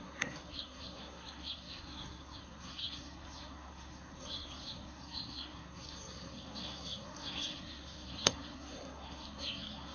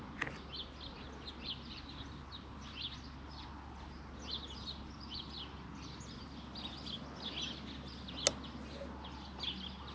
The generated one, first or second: first